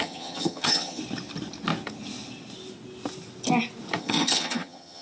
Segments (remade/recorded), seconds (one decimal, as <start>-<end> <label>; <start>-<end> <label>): 0.0-1.0 remade; 1.0-4.0 recorded; 4.0-5.0 remade